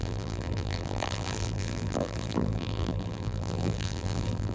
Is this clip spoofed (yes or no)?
yes